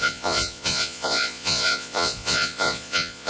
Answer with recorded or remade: remade